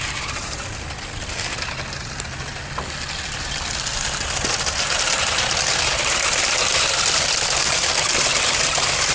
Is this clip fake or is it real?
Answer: real